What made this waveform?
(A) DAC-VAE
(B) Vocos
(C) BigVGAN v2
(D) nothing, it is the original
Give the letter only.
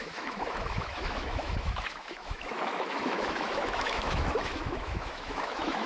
A